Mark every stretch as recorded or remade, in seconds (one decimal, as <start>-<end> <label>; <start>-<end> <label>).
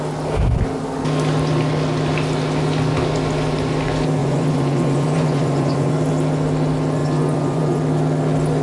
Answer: 0.0-4.2 recorded; 4.2-5.9 remade; 5.9-7.0 recorded; 7.0-7.8 remade; 7.8-8.6 recorded